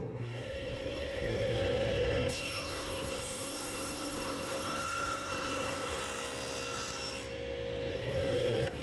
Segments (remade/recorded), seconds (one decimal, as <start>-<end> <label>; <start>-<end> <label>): 0.0-6.0 remade; 6.0-7.9 recorded; 7.9-8.8 remade